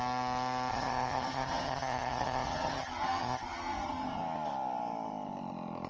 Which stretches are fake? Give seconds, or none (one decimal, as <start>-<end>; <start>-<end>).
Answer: 0.7-4.2